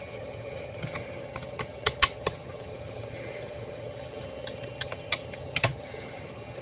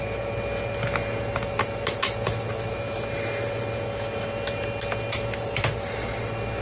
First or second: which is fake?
first